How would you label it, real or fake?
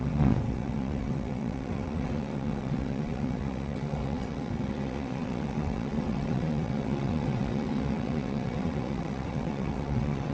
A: fake